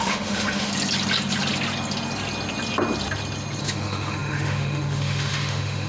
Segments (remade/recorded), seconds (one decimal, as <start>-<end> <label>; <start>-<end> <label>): 0.0-0.7 remade; 0.7-3.6 recorded; 3.6-5.9 remade